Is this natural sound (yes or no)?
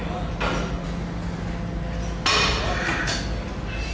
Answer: yes